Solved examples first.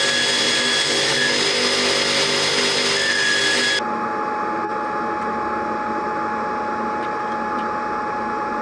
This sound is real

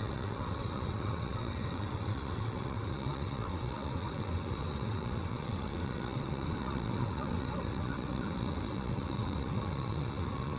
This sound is fake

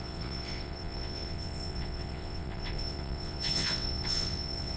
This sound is fake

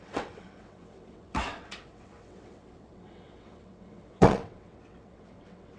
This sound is fake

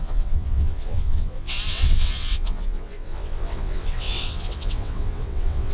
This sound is fake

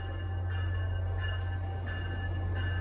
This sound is real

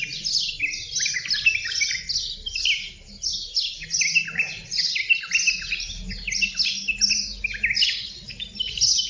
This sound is real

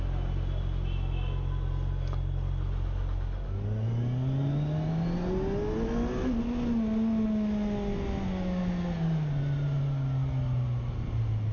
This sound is real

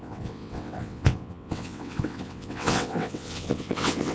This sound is fake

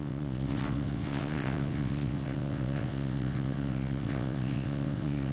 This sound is fake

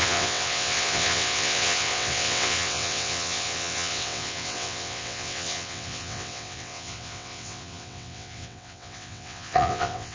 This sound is fake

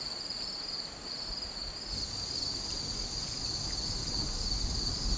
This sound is real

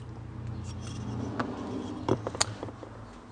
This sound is real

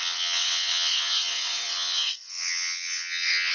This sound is fake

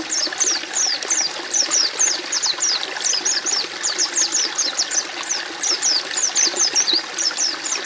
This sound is real